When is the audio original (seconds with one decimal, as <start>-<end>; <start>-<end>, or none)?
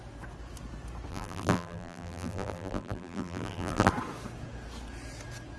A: 0.0-1.1; 3.9-5.6